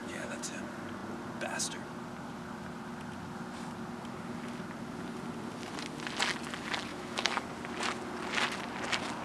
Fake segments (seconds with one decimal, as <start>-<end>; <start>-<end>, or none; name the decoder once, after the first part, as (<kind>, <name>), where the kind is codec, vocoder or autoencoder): 0.0-0.6 (autoencoder, DAC-VAE); 6.9-7.4